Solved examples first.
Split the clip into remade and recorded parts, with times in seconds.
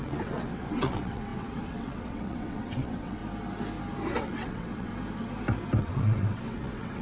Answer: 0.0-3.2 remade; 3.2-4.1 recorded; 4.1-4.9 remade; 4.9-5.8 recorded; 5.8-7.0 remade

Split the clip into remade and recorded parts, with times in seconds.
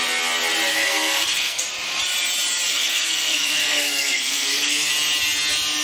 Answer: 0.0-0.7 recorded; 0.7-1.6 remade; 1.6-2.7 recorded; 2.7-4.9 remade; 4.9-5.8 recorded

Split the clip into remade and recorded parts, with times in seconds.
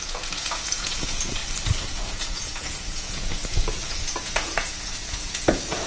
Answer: 0.0-1.4 remade; 1.4-1.9 recorded; 1.9-5.9 remade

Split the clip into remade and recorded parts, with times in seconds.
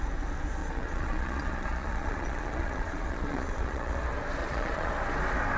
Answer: 0.0-0.6 recorded; 0.6-4.0 remade; 4.0-4.4 recorded; 4.4-4.9 remade; 4.9-5.6 recorded